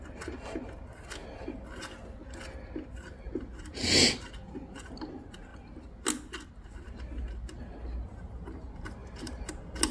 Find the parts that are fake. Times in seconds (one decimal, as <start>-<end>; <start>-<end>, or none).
9.0-9.5